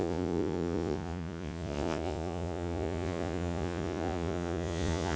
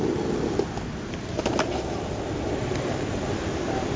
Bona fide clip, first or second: second